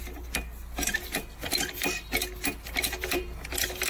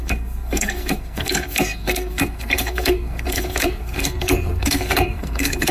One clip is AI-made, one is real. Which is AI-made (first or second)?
second